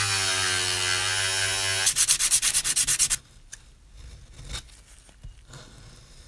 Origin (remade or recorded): recorded